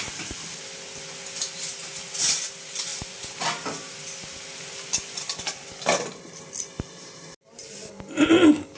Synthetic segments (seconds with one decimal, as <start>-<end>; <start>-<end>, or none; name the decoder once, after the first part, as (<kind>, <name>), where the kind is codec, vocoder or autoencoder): none